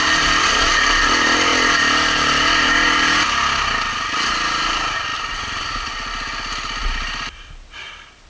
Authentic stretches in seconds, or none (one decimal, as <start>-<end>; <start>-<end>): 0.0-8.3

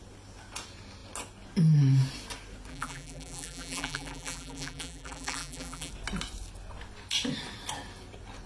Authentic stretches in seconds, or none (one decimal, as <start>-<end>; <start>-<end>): 0.0-2.7; 5.9-8.5

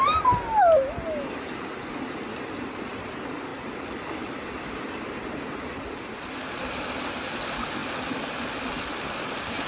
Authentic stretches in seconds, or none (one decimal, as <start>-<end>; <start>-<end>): 0.0-9.7

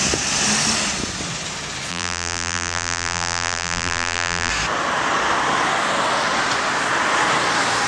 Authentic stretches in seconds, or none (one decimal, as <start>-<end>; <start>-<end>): 0.0-1.9; 4.5-7.9

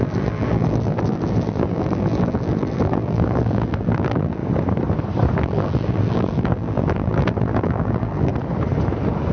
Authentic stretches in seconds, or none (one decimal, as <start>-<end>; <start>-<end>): 4.4-5.4; 8.3-9.3

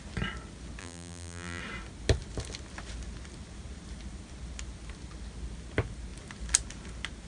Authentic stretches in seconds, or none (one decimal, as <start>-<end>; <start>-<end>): 0.0-0.8; 1.6-7.3